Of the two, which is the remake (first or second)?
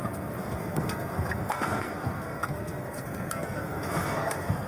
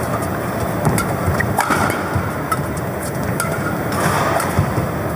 first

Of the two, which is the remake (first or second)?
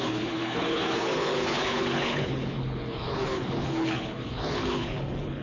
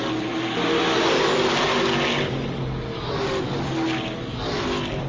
first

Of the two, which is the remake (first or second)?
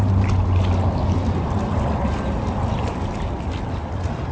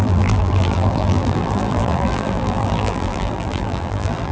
second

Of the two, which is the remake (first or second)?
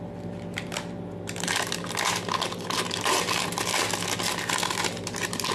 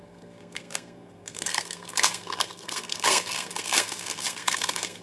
second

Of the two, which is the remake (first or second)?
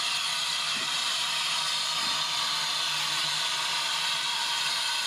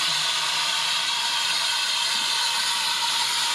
second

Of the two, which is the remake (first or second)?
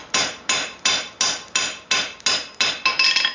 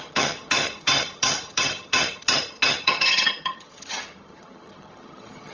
second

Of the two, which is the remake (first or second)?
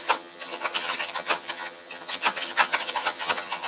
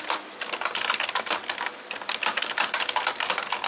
first